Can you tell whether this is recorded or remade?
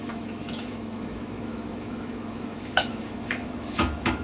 remade